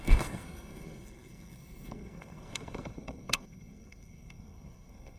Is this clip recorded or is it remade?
remade